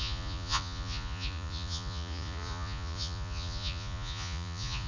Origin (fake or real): fake